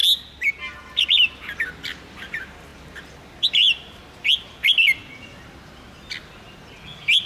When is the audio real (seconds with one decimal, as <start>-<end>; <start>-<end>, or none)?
0.0-7.3